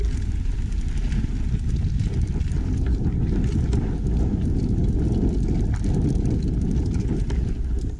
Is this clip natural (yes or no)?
yes